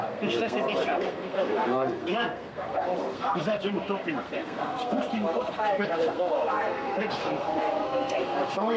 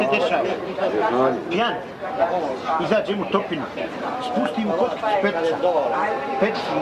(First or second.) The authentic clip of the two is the second